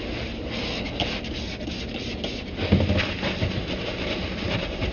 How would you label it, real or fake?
real